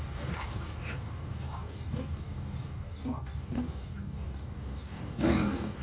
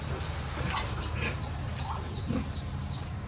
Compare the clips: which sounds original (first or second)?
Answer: second